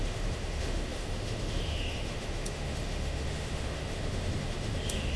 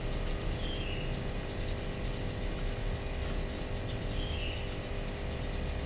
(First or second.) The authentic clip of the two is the second